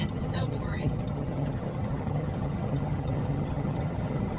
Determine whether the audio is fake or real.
fake